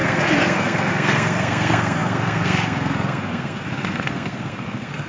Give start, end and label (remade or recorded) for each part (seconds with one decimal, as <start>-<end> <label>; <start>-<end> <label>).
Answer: 0.0-5.1 remade